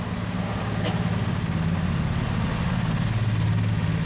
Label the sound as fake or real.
real